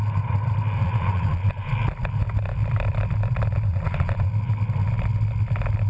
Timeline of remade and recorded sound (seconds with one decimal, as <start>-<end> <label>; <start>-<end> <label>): 0.0-0.8 recorded; 0.8-1.7 remade; 1.7-3.7 recorded; 3.7-4.3 remade; 4.3-5.9 recorded